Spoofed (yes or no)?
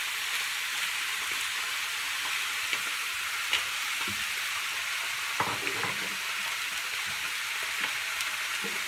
no